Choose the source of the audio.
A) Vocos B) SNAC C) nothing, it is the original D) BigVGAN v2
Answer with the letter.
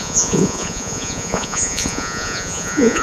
A